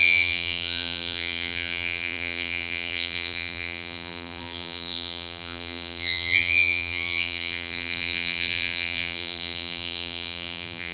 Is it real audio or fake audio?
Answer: fake